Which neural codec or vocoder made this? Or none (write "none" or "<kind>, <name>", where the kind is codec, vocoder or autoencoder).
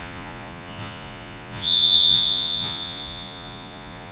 vocoder, Vocos